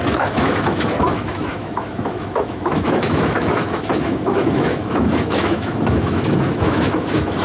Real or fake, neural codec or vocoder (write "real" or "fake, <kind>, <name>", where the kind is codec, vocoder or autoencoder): fake, autoencoder, DAC-VAE